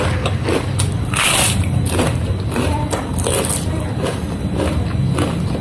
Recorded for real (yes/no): no